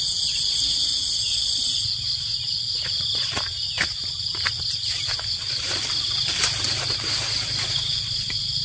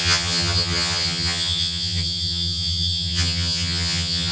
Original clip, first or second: first